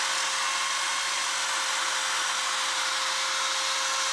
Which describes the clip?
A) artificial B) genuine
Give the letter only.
B